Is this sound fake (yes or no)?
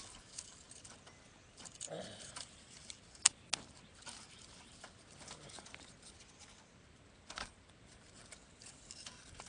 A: no